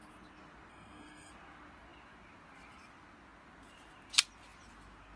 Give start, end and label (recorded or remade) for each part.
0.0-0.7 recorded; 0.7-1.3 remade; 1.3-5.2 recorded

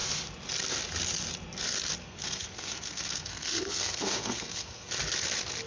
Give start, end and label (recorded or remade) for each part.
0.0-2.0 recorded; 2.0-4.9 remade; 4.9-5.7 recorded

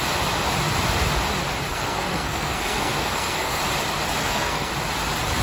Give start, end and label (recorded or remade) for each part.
0.0-1.7 recorded; 1.7-3.6 remade; 3.6-4.2 recorded; 4.2-4.7 remade; 4.7-5.4 recorded

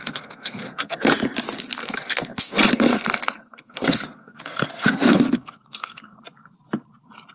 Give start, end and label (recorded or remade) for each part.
0.0-1.1 remade; 1.1-1.8 recorded; 1.8-6.2 remade; 6.2-7.3 recorded

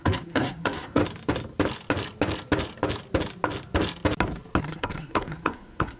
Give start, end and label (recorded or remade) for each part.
0.0-1.0 remade; 1.0-4.6 recorded; 4.6-6.0 remade